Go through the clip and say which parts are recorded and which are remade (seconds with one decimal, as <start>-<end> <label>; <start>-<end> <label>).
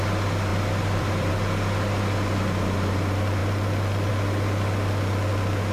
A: 0.0-0.5 recorded; 0.5-1.3 remade; 1.3-5.7 recorded